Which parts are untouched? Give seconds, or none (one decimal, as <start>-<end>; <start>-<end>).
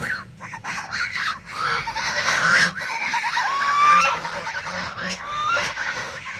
3.9-4.8